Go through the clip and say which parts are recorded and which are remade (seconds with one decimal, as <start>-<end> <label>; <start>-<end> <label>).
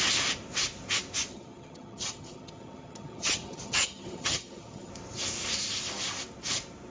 0.0-1.3 recorded; 1.3-4.9 remade; 4.9-6.9 recorded